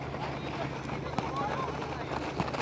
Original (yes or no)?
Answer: yes